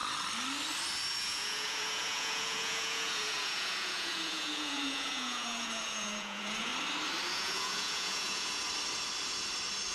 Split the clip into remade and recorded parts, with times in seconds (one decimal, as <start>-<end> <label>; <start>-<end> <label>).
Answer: 0.0-1.2 recorded; 1.2-6.7 remade; 6.7-7.3 recorded; 7.3-8.6 remade; 8.6-9.9 recorded